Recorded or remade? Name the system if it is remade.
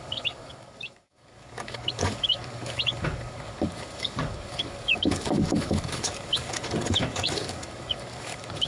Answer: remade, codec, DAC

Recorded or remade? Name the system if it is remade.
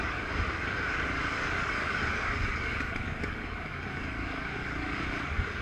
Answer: remade, codec, DAC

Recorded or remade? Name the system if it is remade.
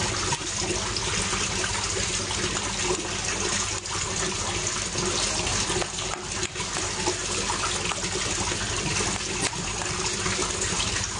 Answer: recorded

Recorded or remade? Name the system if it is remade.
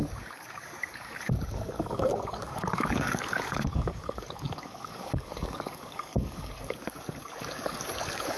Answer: remade, codec, DAC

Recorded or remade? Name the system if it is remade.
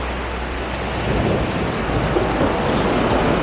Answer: recorded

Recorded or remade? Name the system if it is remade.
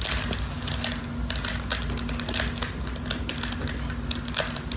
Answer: recorded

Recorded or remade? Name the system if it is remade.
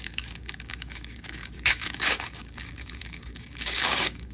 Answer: remade, codec, DAC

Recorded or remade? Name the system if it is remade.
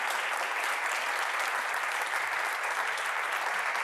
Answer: recorded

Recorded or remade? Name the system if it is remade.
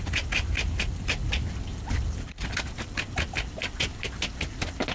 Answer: recorded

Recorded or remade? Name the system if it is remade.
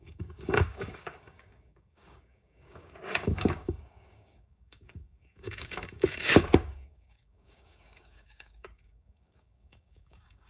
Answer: remade, codec, DAC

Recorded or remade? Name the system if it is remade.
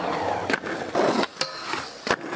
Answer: recorded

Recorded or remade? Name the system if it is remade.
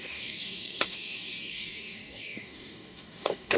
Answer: remade, codec, DAC